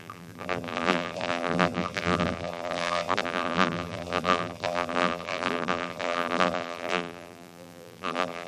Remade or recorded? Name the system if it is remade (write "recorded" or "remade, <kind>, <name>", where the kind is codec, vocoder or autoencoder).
remade, vocoder, BigVGAN v2